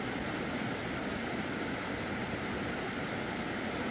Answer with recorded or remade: recorded